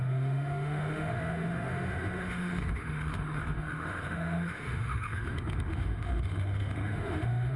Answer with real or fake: fake